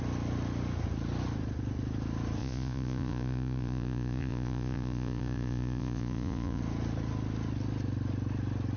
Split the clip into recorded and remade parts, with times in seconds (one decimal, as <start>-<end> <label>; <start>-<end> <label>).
0.0-2.4 recorded; 2.4-6.6 remade; 6.6-8.8 recorded